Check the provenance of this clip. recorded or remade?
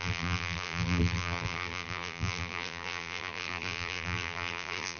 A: remade